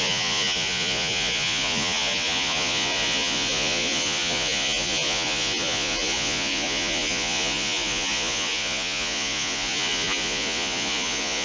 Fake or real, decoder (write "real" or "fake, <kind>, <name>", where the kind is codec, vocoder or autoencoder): fake, vocoder, Vocos